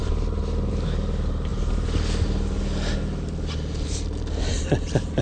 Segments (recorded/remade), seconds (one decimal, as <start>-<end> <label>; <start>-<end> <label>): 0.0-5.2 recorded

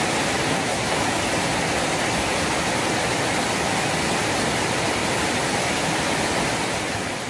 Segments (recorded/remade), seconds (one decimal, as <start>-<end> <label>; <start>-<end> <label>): 0.0-0.5 recorded; 0.5-1.0 remade; 1.0-7.3 recorded

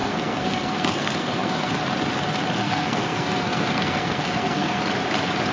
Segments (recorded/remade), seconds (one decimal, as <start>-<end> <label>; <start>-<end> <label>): 0.0-1.7 remade; 1.7-2.6 recorded; 2.6-4.8 remade; 4.8-5.5 recorded

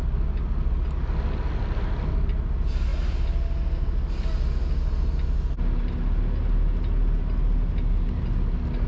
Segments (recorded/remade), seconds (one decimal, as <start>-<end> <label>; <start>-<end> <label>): 0.0-8.9 recorded

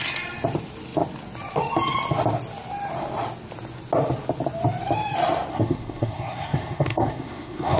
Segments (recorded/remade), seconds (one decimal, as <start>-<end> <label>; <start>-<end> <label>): 0.0-5.5 recorded; 5.5-7.8 remade

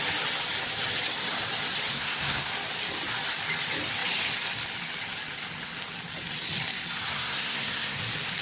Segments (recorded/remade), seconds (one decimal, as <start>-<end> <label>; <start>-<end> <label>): 0.0-1.9 recorded; 1.9-2.5 remade; 2.5-7.1 recorded; 7.1-8.0 remade; 8.0-8.4 recorded